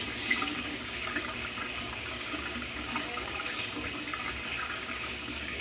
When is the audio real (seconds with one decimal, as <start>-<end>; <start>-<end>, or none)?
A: 0.0-0.5; 3.9-4.5